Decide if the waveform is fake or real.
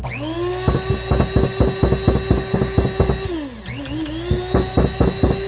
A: real